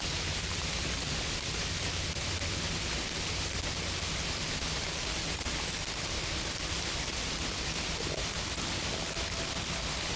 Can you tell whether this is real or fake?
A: real